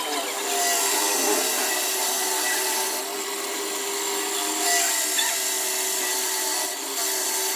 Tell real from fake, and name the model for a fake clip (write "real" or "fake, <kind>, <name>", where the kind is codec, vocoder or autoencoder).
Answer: real